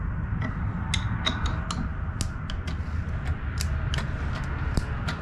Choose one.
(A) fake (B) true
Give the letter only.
B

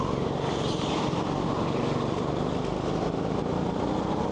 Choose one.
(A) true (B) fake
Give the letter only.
A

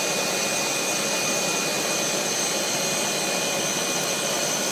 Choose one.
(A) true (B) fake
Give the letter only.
A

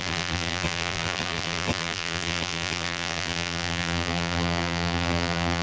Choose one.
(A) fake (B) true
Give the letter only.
A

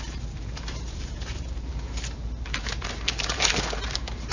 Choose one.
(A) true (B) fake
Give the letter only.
B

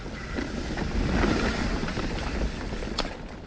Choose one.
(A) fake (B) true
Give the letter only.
B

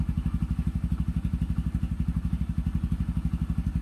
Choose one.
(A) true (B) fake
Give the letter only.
A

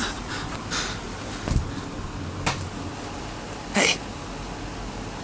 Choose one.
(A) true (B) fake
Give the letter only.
A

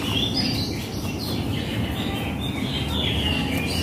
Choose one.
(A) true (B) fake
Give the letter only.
A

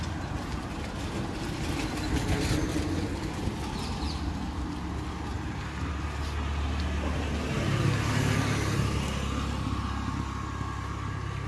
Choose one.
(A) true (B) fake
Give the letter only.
A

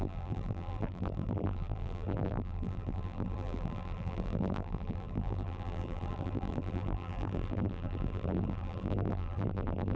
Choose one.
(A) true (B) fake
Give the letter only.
B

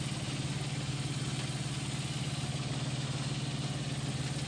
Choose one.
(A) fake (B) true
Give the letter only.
B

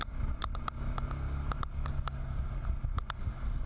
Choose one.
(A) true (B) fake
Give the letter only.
A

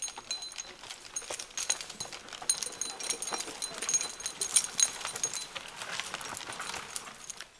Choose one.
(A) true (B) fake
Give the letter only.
A